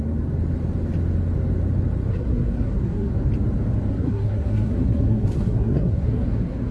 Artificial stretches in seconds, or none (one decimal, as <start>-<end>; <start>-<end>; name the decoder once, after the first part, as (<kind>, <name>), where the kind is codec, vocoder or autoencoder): 2.1-3.1 (codec, SNAC); 3.9-6.7